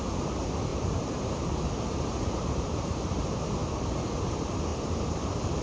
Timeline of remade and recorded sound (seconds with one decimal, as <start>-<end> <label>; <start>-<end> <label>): 0.0-0.7 recorded; 0.7-3.2 remade; 3.2-4.7 recorded; 4.7-5.6 remade